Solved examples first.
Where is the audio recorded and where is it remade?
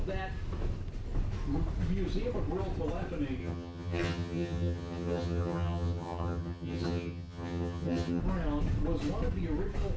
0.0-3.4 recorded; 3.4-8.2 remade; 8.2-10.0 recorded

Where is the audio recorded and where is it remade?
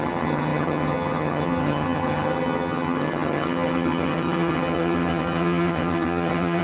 0.0-6.6 remade